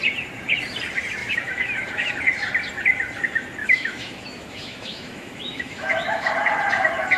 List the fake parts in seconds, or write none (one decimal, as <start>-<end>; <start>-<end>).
1.2-2.1; 3.6-6.3